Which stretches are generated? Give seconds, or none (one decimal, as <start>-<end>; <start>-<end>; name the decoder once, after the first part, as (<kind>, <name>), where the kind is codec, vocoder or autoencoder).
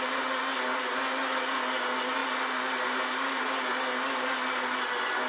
none